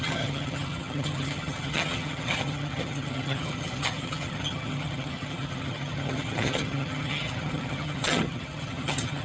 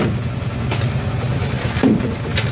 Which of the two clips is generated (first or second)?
first